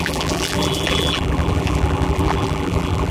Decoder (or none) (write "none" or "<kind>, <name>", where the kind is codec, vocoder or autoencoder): vocoder, BigVGAN v2